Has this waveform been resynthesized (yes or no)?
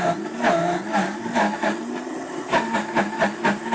no